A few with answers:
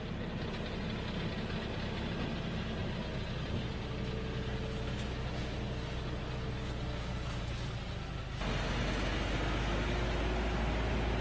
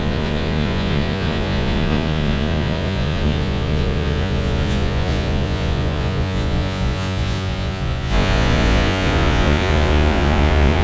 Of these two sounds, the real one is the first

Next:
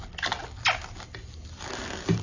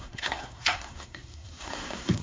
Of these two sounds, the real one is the first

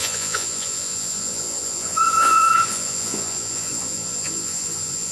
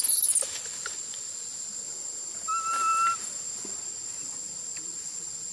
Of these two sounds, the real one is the second